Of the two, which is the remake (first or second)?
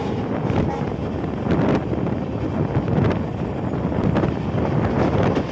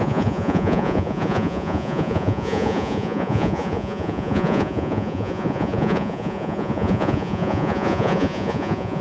second